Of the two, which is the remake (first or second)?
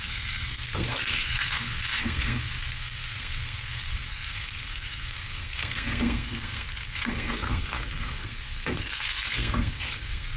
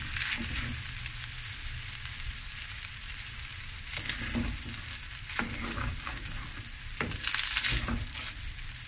first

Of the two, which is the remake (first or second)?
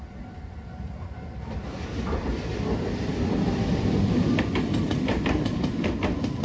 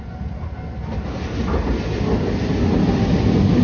first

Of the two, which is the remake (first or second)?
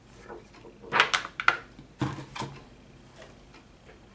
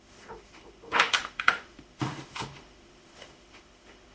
second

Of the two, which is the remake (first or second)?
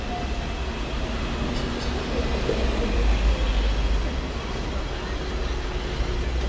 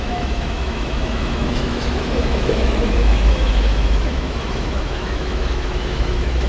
second